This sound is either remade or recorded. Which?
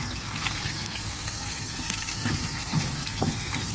remade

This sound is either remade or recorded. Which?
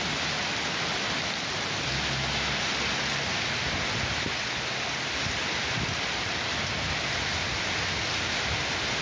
recorded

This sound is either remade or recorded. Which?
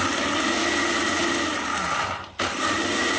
recorded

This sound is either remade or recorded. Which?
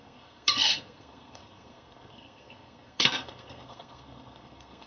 remade